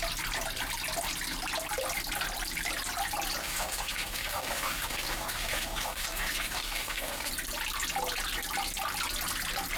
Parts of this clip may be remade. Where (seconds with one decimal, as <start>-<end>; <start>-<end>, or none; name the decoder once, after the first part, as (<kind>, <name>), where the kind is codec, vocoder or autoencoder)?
3.4-7.3 (codec, DAC)